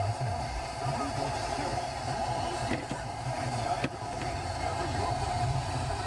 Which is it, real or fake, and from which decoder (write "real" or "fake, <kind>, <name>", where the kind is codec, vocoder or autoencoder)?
fake, vocoder, BigVGAN v2